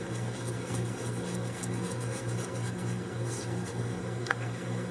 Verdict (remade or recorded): remade